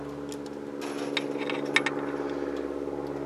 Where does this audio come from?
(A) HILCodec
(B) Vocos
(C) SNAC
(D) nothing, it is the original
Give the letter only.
D